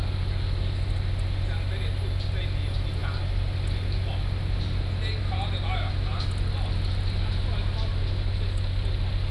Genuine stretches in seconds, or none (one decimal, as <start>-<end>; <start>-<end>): 0.0-9.3